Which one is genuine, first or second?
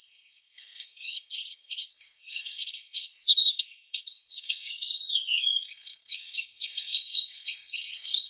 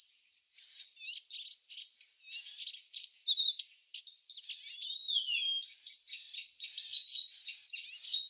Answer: second